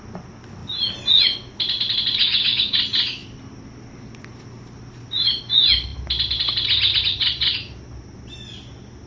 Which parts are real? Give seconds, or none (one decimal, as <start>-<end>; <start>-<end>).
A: 0.0-2.2; 2.8-9.1